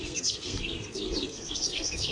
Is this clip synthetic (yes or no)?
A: yes